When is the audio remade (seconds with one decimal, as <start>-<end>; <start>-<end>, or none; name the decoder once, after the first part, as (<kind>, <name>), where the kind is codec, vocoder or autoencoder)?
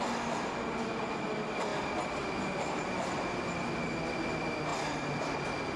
none